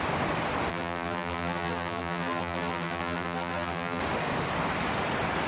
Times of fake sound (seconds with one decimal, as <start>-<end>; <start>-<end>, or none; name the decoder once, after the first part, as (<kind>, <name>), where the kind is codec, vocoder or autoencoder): 0.7-4.0 (vocoder, BigVGAN v2)